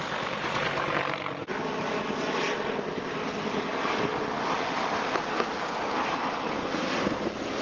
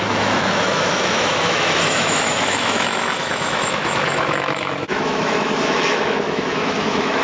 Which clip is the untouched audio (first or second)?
first